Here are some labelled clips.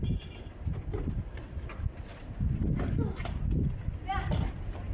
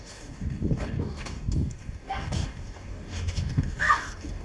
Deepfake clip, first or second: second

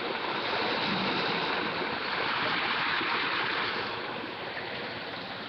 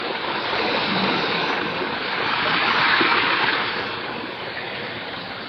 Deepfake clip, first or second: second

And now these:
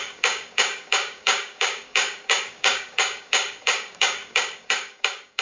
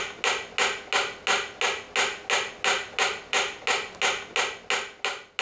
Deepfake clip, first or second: first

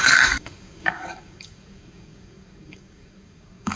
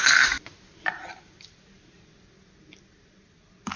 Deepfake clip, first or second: first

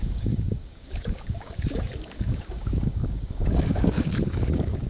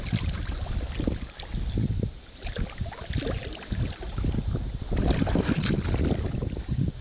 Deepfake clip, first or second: first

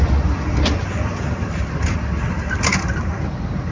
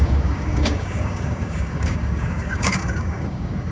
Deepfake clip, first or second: second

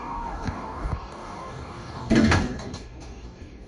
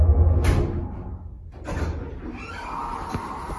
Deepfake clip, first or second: first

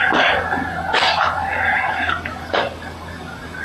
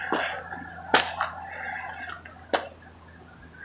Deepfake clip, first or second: first